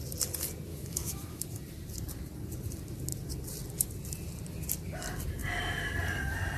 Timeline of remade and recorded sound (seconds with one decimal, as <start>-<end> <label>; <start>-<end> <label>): 0.0-0.7 recorded; 0.7-1.4 remade; 1.4-6.6 recorded

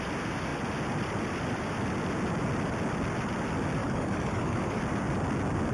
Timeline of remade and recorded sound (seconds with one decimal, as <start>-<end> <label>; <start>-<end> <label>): 0.0-3.8 recorded; 3.8-4.8 remade; 4.8-5.7 recorded

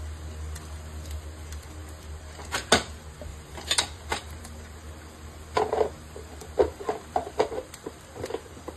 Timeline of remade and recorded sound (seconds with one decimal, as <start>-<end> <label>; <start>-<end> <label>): 0.0-3.3 recorded; 3.3-4.4 remade; 4.4-7.2 recorded; 7.2-8.8 remade

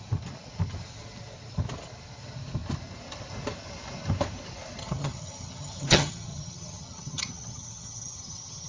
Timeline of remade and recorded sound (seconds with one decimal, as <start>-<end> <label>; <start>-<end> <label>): 0.0-4.8 recorded; 4.8-8.7 remade

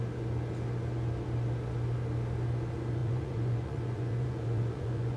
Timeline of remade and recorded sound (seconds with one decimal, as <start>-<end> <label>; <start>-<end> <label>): 0.0-3.0 recorded; 3.0-5.2 remade

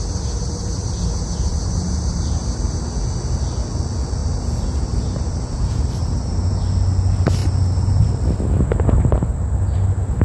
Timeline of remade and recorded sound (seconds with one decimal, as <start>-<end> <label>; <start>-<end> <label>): 0.0-1.5 recorded; 1.5-2.4 remade; 2.4-4.2 recorded; 4.2-6.6 remade; 6.6-7.4 recorded; 7.4-8.1 remade; 8.1-10.2 recorded